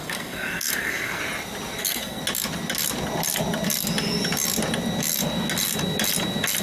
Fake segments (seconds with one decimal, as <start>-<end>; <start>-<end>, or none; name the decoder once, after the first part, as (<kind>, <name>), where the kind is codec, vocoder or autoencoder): 0.0-1.2 (codec, SNAC); 1.8-2.2